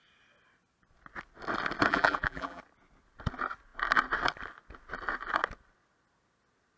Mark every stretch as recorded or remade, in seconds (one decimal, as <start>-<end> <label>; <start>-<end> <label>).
0.0-1.9 recorded; 1.9-2.6 remade; 2.6-6.8 recorded